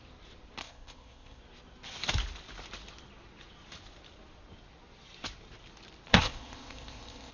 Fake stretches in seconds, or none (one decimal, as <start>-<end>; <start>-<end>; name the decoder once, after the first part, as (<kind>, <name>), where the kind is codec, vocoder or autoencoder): 0.6-1.4 (codec, ZipCodec); 6.1-7.3